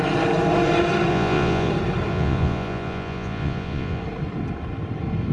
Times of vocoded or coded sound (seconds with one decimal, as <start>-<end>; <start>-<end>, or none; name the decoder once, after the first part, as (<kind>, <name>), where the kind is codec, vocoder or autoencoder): 1.1-1.7 (vocoder, Vocos); 2.1-4.0